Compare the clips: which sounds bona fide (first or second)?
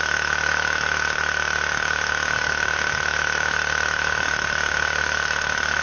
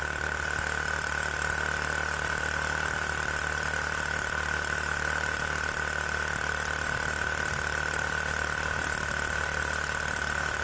second